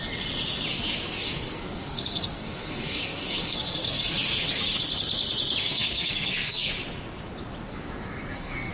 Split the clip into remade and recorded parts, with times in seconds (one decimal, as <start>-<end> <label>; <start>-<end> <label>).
0.0-0.7 recorded; 0.7-4.7 remade; 4.7-5.6 recorded; 5.6-6.7 remade; 6.7-7.7 recorded; 7.7-8.7 remade